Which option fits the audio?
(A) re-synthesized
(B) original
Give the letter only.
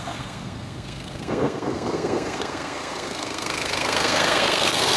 A